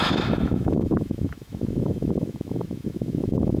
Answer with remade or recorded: remade